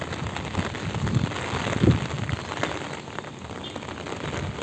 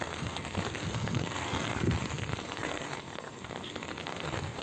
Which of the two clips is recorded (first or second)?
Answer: first